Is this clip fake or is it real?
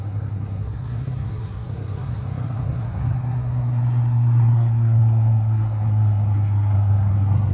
fake